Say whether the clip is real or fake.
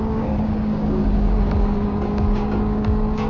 fake